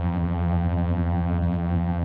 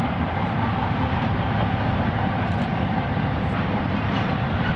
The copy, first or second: first